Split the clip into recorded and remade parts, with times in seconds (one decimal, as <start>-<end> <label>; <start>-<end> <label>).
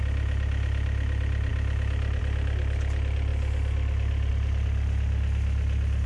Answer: 0.0-6.1 recorded